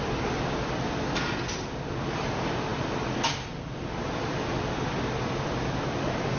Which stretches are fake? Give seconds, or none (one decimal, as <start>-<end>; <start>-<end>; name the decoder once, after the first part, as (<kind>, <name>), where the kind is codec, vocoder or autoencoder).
none